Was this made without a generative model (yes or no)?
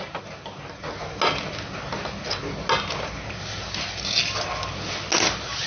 yes